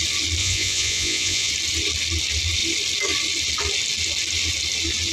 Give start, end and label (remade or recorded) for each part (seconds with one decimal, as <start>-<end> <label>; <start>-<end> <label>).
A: 0.0-0.4 recorded; 0.4-1.5 remade; 1.5-5.1 recorded